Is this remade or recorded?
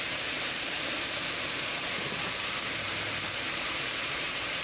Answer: remade